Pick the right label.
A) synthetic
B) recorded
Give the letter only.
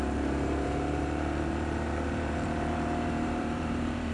A